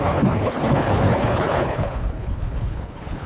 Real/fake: fake